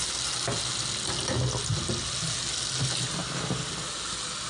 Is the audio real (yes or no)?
yes